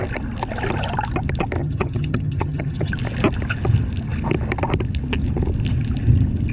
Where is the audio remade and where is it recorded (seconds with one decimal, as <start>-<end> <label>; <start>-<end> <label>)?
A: 0.0-1.6 recorded; 1.6-2.9 remade; 2.9-6.5 recorded